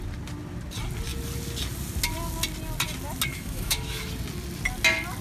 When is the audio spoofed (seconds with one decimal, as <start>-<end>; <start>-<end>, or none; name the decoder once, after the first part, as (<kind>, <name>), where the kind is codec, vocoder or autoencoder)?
3.3-4.0 (autoencoder, DAC-VAE)